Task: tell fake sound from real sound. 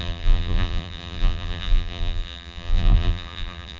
fake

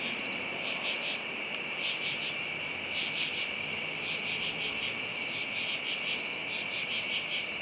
real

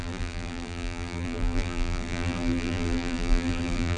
fake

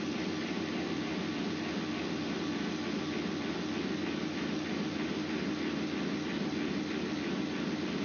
real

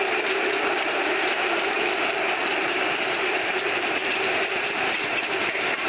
fake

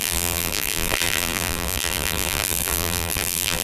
fake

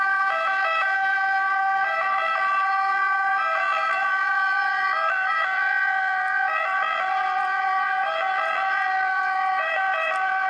fake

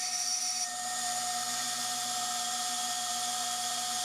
fake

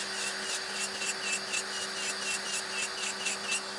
real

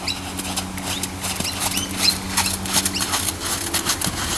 real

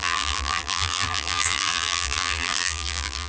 fake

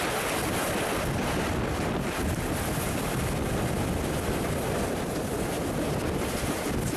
real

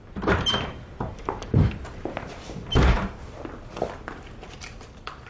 fake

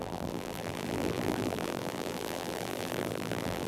fake